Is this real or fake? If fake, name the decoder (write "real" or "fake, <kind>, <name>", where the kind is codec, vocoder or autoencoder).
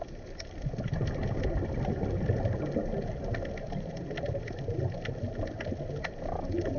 real